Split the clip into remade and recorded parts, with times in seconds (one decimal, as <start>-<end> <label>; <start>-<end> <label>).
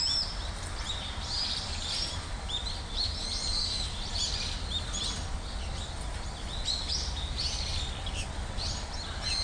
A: 0.0-4.3 remade; 4.3-9.4 recorded